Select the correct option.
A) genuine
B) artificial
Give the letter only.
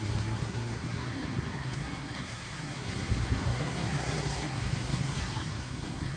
B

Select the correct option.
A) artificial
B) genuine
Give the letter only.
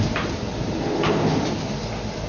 B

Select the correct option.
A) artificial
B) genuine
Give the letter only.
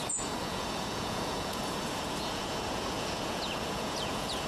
A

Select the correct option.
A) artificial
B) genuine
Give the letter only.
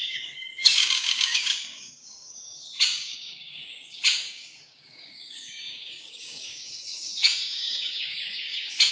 A